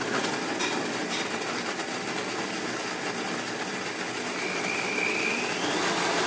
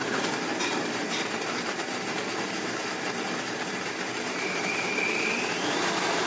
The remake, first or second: second